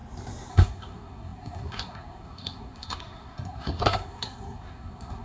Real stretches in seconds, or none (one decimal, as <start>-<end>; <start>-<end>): 0.0-0.5